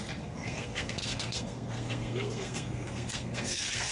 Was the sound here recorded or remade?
remade